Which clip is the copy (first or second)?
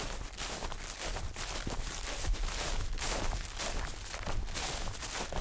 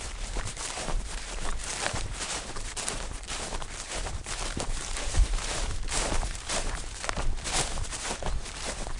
second